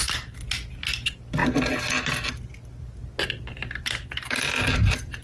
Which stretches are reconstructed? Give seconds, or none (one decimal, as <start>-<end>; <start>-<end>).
none